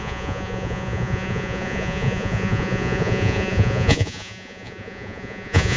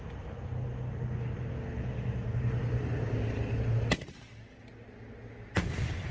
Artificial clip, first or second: first